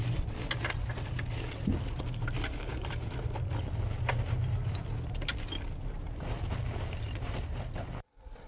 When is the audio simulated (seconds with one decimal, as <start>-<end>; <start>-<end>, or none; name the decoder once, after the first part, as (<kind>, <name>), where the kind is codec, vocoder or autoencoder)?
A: none